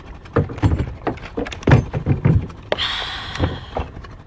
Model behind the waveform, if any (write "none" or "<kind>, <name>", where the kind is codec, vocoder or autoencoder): none